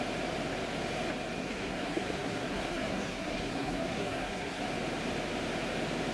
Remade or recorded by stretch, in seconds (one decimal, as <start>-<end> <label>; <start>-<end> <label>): 0.0-1.4 recorded; 1.4-4.6 remade; 4.6-6.1 recorded